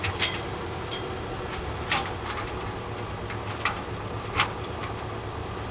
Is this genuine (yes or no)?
yes